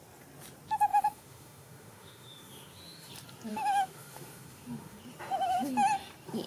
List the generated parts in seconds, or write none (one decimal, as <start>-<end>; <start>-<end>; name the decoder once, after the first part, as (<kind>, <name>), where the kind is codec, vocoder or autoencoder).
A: 0.9-3.1 (autoencoder, DAC-VAE); 3.5-5.0